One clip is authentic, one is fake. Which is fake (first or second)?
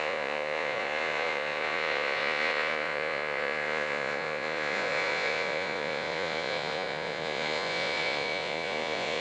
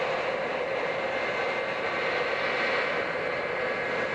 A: first